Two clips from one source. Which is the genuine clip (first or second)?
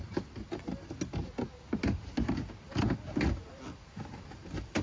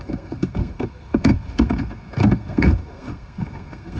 first